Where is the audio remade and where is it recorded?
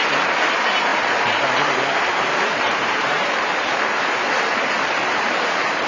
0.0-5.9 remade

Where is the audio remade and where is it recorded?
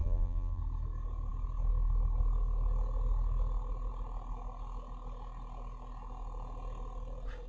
0.0-0.6 remade; 0.6-7.5 recorded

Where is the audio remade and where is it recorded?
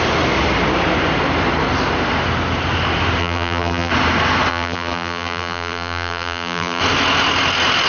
0.0-3.2 recorded; 3.2-3.9 remade; 3.9-4.5 recorded; 4.5-6.8 remade; 6.8-7.9 recorded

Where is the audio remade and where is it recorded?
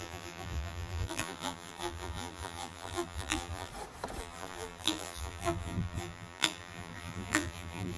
0.0-3.7 remade; 3.7-4.2 recorded; 4.2-8.0 remade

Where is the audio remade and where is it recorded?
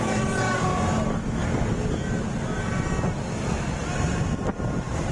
0.0-5.1 recorded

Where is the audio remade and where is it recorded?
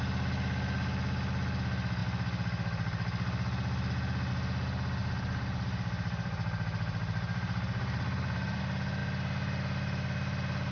0.0-5.0 recorded; 5.0-8.6 remade; 8.6-10.7 recorded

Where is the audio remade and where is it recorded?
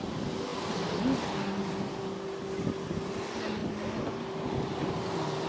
0.0-5.5 recorded